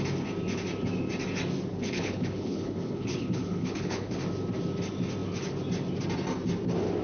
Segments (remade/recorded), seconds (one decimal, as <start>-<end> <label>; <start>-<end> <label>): 0.0-1.7 recorded; 1.7-4.2 remade; 4.2-7.0 recorded